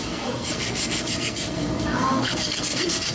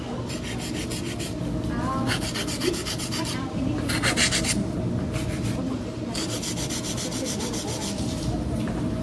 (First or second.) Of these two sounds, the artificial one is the first